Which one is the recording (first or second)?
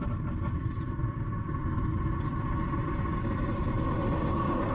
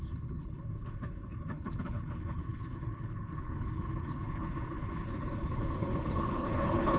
first